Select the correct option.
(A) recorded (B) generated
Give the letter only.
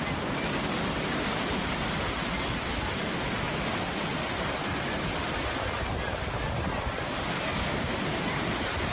A